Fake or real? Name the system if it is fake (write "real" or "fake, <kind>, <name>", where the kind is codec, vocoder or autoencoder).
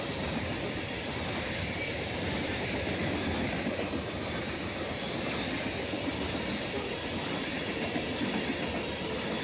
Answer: fake, vocoder, BigVGAN v2